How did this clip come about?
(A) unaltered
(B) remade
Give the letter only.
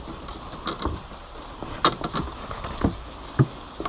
A